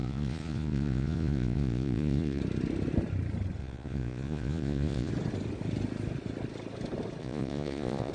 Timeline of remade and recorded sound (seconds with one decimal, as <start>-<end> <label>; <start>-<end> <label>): 0.0-2.4 remade; 2.4-3.6 recorded; 3.6-5.1 remade; 5.1-7.2 recorded; 7.2-8.1 remade